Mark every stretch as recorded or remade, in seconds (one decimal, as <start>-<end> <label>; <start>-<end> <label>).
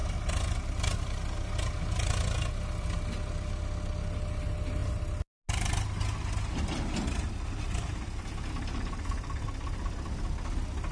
0.0-10.9 recorded